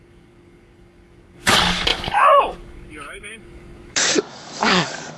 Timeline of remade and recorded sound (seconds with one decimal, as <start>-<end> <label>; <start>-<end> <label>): 0.0-5.2 remade

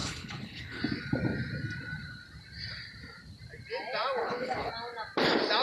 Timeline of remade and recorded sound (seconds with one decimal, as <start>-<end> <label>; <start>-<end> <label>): 0.0-0.8 remade; 0.8-4.2 recorded; 4.2-4.7 remade; 4.7-5.6 recorded